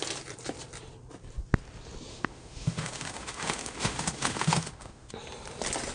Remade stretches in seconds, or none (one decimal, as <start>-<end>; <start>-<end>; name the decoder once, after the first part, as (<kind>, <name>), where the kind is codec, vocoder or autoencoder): 2.1-5.1 (autoencoder, DAC-VAE)